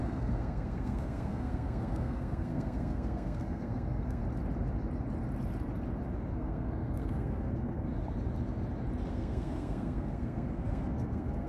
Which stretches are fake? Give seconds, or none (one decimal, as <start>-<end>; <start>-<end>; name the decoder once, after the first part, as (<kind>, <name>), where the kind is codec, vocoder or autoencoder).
0.0-4.2 (codec, SNAC); 6.3-7.9; 9.1-11.5